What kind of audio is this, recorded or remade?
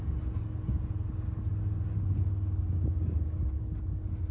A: recorded